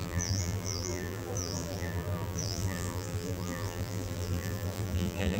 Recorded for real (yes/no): no